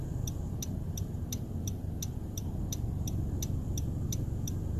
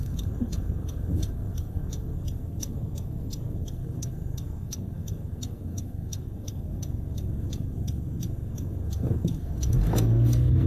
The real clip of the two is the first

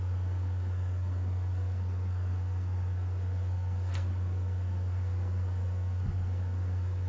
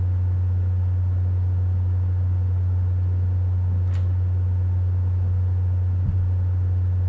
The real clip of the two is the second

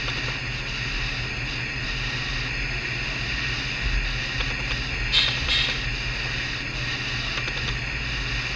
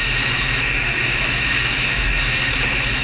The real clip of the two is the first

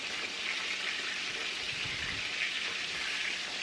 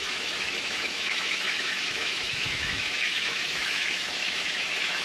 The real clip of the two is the first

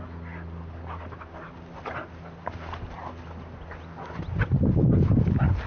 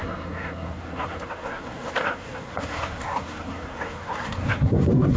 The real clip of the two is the first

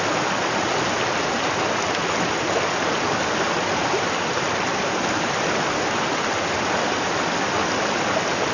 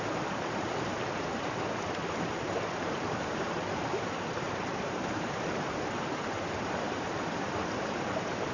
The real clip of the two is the first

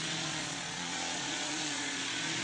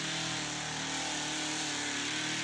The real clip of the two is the second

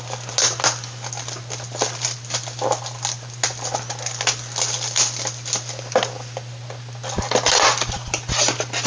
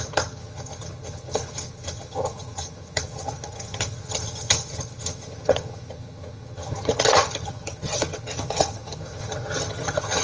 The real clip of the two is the first